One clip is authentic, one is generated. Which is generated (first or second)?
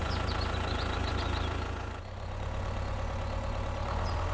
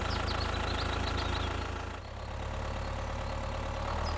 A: first